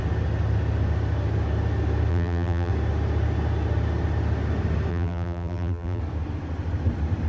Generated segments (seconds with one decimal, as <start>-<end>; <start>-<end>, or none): 2.1-2.7; 4.9-6.0